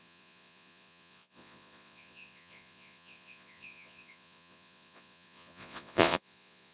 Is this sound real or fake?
fake